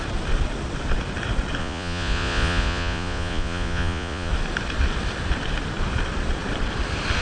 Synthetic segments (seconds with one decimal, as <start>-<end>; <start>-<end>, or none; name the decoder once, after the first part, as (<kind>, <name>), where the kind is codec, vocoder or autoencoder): 1.6-4.3 (vocoder, Vocos)